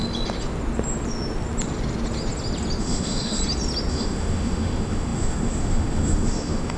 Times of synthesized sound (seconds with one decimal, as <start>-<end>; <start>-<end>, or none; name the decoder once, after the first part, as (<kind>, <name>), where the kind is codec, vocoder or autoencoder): 2.8-3.4 (autoencoder, DAC-VAE); 3.9-6.8